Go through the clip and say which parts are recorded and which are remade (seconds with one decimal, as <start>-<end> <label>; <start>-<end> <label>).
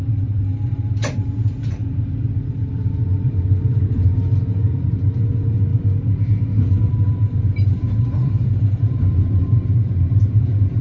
0.0-1.8 remade; 1.8-2.4 recorded; 2.4-5.7 remade; 5.7-6.9 recorded; 6.9-10.8 remade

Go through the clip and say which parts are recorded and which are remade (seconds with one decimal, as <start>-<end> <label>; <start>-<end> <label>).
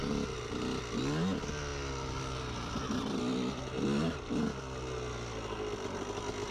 0.0-1.7 recorded; 1.7-3.2 remade; 3.2-6.5 recorded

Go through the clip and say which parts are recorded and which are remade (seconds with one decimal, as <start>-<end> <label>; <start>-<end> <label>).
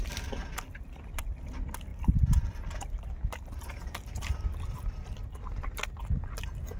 0.0-0.4 recorded; 0.4-1.2 remade; 1.2-1.9 recorded; 1.9-6.0 remade; 6.0-6.8 recorded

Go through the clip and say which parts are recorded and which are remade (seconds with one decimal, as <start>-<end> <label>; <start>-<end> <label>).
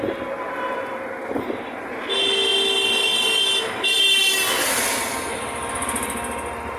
0.0-6.8 recorded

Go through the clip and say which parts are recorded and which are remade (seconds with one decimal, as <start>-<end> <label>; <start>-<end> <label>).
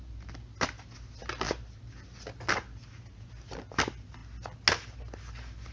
0.0-5.7 recorded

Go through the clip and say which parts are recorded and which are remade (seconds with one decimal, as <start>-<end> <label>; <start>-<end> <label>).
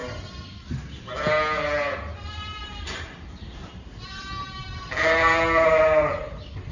0.0-2.3 recorded; 2.3-6.7 remade